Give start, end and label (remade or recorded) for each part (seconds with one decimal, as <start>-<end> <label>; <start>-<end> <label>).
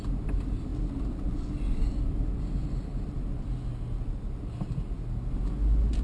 0.0-6.0 recorded